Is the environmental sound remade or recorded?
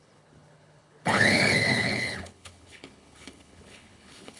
remade